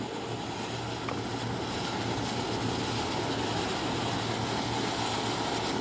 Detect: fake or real real